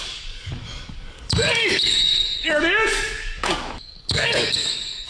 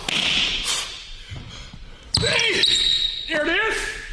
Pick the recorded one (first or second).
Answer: second